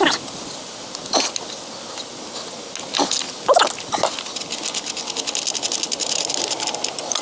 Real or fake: real